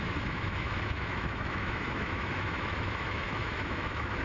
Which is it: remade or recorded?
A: remade